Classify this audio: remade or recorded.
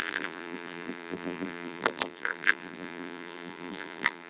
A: remade